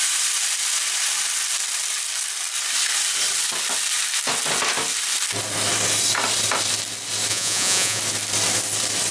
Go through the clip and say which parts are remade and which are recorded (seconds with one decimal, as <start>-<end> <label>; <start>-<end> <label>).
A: 0.0-7.3 recorded; 7.3-8.0 remade; 8.0-9.1 recorded